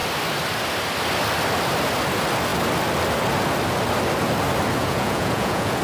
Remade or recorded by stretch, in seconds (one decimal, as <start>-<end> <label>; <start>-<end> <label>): 0.0-4.8 recorded; 4.8-5.8 remade